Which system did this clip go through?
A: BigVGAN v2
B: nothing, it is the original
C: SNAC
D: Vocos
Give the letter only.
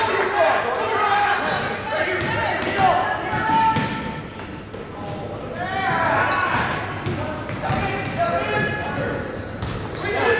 B